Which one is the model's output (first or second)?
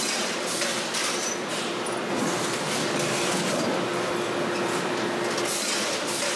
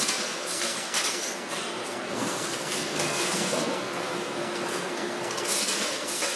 second